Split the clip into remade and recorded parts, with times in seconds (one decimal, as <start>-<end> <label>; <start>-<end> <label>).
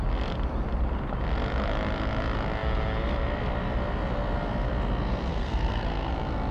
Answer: 0.0-5.3 recorded; 5.3-6.1 remade; 6.1-6.5 recorded